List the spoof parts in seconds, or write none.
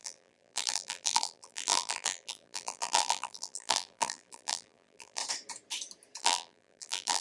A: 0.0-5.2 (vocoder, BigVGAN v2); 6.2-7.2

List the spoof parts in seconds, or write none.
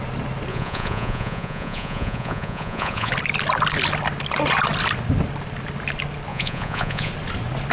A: 0.5-3.1 (vocoder, Vocos); 6.3-7.1